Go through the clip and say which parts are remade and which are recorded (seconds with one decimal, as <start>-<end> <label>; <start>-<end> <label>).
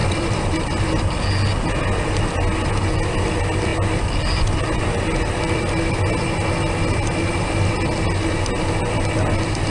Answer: 0.0-9.7 recorded